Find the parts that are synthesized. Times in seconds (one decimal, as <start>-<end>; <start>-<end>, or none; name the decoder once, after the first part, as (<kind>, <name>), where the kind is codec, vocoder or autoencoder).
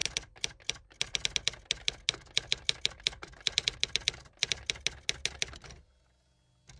none